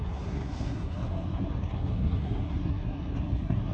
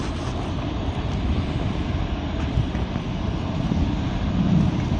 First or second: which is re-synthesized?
first